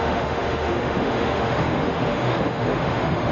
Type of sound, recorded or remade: remade